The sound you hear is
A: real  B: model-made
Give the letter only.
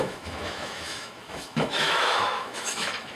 B